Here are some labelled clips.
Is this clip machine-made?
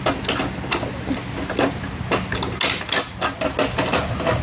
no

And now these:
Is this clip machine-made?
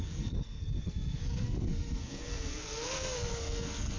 yes